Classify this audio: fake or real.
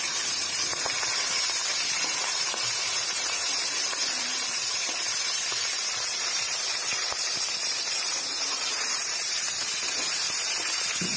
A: fake